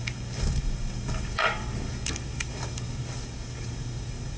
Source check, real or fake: fake